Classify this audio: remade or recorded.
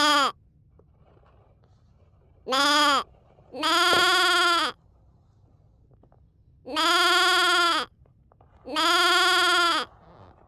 recorded